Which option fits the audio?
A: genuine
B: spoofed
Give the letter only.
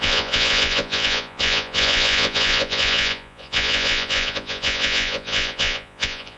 B